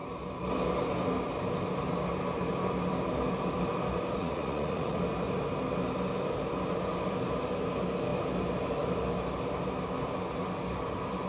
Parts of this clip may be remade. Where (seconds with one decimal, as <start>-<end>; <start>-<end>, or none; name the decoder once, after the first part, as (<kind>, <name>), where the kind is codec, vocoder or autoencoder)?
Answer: 4.2-5.0 (vocoder, Vocos)

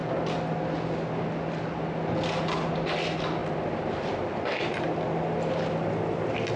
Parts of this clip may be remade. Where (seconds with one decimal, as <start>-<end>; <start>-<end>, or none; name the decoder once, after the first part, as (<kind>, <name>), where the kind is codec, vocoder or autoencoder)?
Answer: none

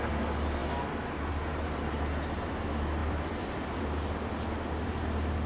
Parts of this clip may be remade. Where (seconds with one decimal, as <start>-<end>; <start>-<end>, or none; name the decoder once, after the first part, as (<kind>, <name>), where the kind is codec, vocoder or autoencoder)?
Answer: 3.0-3.8 (vocoder, BigVGAN v2)

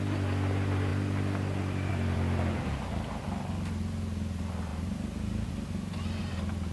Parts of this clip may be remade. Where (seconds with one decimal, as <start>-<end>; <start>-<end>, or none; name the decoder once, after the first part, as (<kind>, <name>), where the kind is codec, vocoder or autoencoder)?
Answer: none

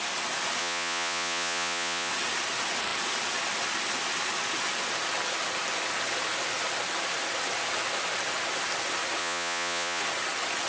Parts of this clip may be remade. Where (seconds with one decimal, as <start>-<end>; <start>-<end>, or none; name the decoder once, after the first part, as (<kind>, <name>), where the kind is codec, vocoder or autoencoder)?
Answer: 0.6-2.1 (vocoder, Vocos); 9.2-10.0

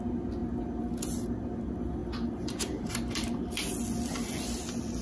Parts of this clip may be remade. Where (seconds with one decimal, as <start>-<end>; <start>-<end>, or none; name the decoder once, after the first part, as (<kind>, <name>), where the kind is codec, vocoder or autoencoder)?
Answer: none

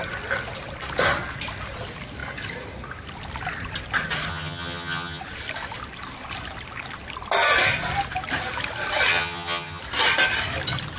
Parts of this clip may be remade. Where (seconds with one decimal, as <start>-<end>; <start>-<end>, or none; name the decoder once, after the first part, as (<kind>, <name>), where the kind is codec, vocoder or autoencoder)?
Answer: 4.3-5.2 (vocoder, HiFi-GAN); 9.1-9.8